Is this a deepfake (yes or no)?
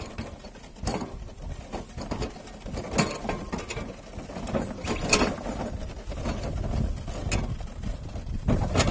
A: no